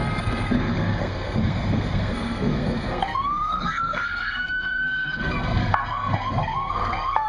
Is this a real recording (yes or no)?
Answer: no